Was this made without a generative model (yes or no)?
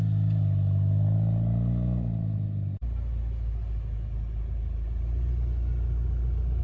yes